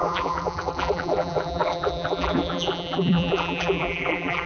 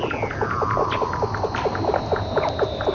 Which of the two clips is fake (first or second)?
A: first